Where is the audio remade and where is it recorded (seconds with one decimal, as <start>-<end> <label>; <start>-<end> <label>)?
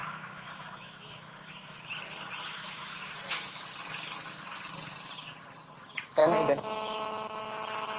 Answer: 0.0-1.9 remade; 1.9-2.5 recorded; 2.5-3.1 remade; 3.1-6.2 recorded; 6.2-7.4 remade; 7.4-8.0 recorded